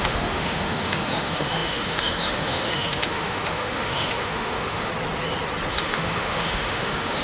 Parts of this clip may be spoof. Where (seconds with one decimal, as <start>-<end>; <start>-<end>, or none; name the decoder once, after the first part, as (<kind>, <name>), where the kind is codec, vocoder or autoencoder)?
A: 0.0-4.9 (autoencoder, DAC-VAE); 5.7-7.2

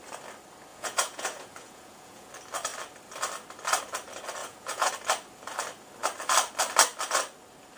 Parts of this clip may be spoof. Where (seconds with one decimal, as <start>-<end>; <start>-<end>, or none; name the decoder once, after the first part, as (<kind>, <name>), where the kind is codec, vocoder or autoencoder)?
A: 0.7-2.3 (vocoder, Vocos); 4.4-4.9

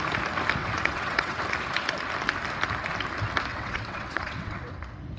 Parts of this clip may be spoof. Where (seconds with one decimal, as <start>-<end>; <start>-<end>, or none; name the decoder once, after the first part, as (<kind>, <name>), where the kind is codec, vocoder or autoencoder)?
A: 0.6-1.4 (vocoder, WaveNeXt); 3.5-4.7

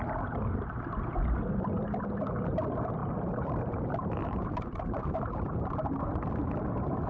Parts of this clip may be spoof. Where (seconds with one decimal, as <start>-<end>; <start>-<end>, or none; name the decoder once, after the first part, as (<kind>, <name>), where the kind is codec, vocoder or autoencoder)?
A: 3.0-6.1 (vocoder, BigVGAN v2)

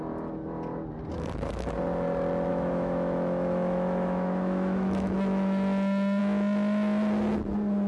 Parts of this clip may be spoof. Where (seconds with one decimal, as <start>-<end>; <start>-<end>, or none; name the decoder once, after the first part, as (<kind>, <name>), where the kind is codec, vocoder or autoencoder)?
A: 2.5-6.2 (autoencoder, DAC-VAE)

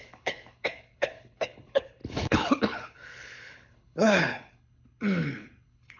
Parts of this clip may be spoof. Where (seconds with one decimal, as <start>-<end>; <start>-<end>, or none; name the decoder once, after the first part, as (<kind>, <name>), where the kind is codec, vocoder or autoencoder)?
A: 0.0-6.0 (codec, HILCodec)

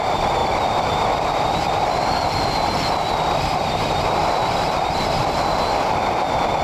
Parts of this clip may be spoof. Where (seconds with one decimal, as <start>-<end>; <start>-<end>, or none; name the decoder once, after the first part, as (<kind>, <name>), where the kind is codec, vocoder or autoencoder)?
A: 4.2-5.2 (vocoder, BigVGAN v2)